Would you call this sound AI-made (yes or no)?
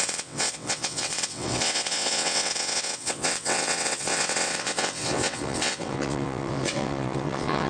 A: yes